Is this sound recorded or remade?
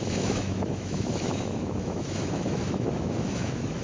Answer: remade